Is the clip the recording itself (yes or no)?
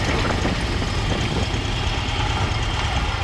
yes